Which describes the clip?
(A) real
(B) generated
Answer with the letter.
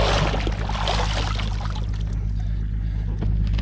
A